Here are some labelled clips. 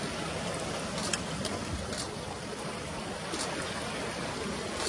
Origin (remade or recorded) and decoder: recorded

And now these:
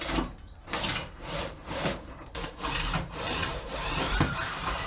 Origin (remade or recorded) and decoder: remade, vocoder, BigVGAN v2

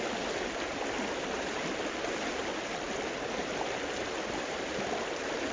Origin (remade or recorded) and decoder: recorded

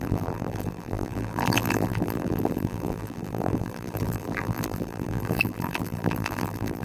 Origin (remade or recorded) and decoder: remade, vocoder, BigVGAN v2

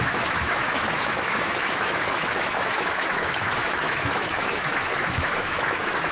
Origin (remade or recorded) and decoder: remade, autoencoder, DAC-VAE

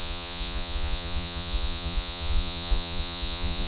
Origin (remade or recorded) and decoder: remade, vocoder, Vocos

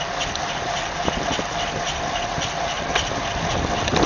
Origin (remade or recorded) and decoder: recorded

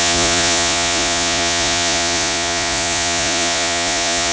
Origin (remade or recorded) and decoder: remade, vocoder, Vocos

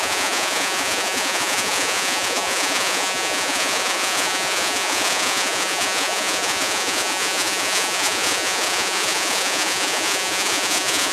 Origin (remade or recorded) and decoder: remade, vocoder, Vocos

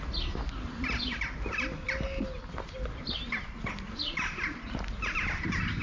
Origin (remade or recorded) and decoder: recorded